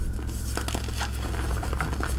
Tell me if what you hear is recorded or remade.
recorded